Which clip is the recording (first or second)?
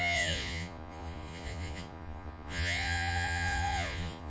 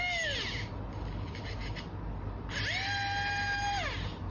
second